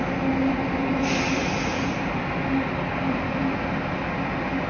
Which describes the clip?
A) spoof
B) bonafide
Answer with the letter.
B